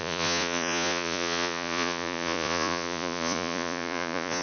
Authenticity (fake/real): fake